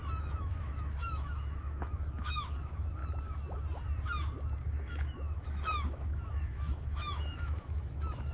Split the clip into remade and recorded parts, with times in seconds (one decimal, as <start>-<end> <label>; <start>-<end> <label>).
0.0-3.0 remade; 3.0-4.6 recorded; 4.6-8.3 remade